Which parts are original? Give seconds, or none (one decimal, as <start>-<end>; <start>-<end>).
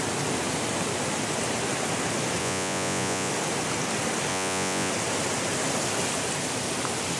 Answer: 0.0-2.4; 3.3-4.3; 4.9-7.2